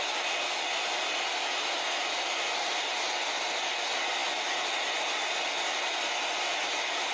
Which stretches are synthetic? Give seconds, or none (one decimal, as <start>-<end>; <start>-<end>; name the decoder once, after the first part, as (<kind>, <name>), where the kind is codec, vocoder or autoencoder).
none